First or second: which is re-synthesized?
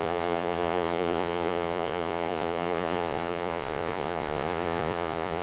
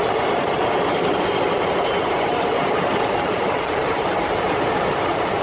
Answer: first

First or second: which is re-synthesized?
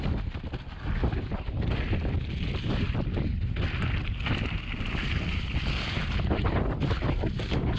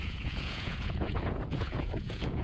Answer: second